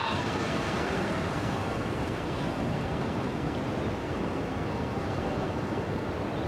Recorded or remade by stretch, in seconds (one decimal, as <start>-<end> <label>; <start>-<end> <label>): 0.0-3.6 remade; 3.6-4.0 recorded; 4.0-6.1 remade; 6.1-6.5 recorded